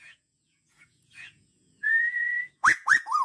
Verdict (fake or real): fake